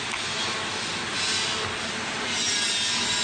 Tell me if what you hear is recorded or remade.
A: recorded